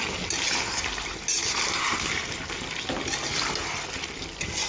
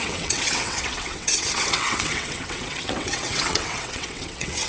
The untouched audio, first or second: first